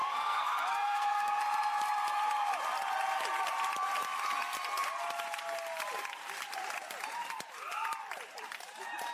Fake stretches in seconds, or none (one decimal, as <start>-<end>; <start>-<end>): 0.0-1.4